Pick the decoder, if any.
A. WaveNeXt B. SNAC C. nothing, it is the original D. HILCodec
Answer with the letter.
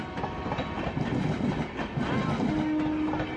C